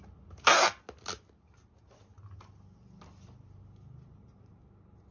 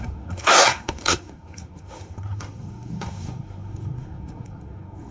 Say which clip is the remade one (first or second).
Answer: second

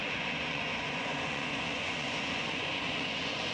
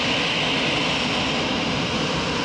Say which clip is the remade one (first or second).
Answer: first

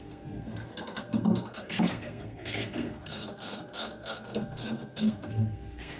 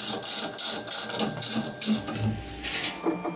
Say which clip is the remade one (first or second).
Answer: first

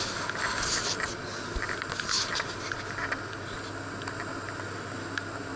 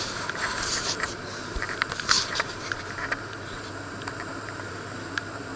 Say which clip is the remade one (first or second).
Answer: second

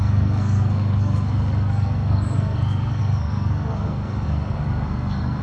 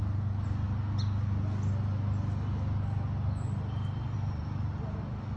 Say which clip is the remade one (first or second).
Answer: first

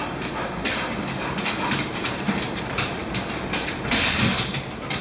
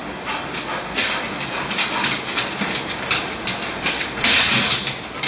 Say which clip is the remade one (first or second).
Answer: first